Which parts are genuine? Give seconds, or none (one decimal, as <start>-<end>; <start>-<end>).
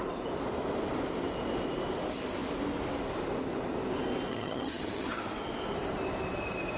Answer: 0.0-4.3; 5.2-6.8